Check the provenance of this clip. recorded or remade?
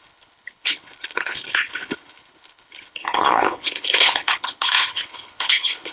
remade